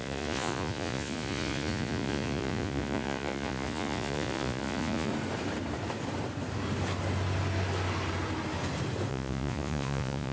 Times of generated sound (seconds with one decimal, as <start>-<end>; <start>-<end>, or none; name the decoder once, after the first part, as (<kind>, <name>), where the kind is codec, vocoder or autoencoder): 0.0-5.1 (vocoder, Vocos); 9.1-10.3